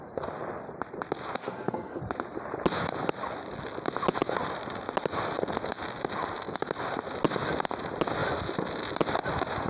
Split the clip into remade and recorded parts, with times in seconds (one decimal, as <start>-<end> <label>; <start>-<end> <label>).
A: 0.0-1.4 recorded; 1.4-2.0 remade; 2.0-9.7 recorded